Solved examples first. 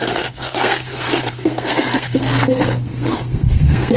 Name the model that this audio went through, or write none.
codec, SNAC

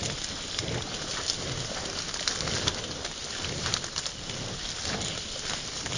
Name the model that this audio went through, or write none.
none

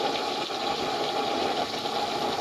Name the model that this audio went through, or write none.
none